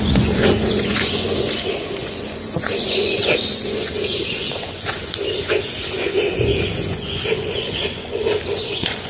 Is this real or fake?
fake